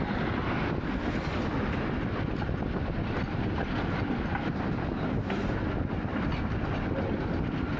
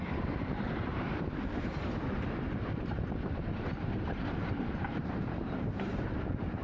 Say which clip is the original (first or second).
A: first